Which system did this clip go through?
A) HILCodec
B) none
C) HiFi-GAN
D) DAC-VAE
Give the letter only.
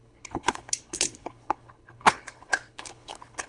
A